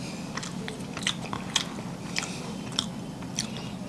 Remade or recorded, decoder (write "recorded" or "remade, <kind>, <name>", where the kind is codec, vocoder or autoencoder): recorded